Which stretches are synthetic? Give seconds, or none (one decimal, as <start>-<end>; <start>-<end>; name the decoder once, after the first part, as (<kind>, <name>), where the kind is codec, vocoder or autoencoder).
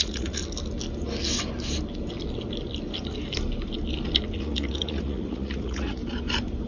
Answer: 0.0-0.4 (vocoder, Vocos); 4.4-6.0